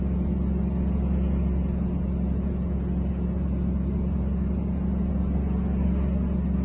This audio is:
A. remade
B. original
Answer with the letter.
B